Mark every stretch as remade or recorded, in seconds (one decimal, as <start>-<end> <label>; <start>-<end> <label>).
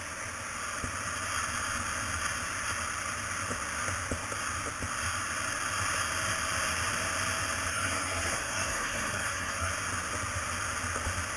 0.0-7.7 recorded; 7.7-9.7 remade; 9.7-11.4 recorded